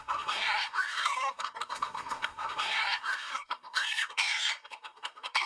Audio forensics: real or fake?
fake